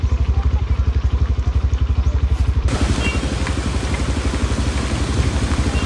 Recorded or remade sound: recorded